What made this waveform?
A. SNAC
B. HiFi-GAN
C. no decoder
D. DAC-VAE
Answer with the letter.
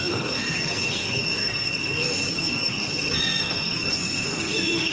A